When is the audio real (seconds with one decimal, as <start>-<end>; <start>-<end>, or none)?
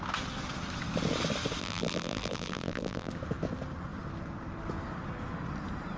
0.0-1.6; 3.1-6.0